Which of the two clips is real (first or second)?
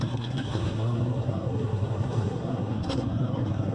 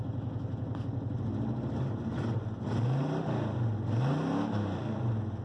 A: second